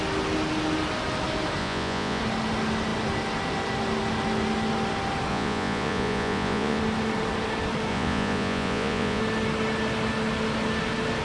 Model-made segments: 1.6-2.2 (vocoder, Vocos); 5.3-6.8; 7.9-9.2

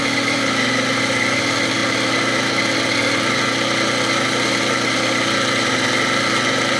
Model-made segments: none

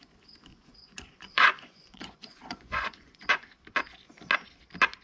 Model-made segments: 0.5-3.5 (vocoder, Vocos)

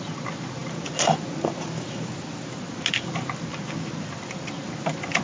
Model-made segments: none